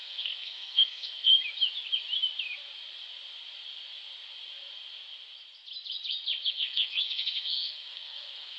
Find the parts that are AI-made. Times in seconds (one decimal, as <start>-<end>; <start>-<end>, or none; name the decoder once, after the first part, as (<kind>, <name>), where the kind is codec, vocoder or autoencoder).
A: 0.0-1.3 (codec, SNAC); 6.5-8.6